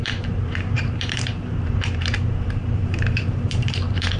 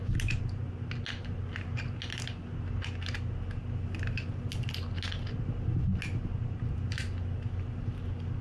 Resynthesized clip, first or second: first